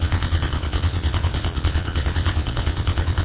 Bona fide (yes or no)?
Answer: no